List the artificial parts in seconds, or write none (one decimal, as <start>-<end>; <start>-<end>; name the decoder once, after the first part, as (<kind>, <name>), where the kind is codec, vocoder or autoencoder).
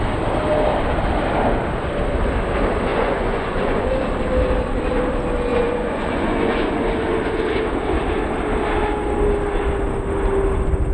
2.9-3.9 (vocoder, Vocos); 5.5-7.3